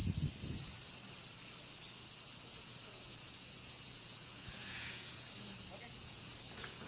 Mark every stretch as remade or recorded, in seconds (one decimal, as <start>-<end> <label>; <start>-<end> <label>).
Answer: 0.0-2.5 recorded; 2.5-6.9 remade